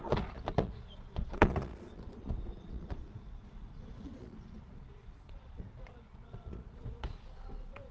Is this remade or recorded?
remade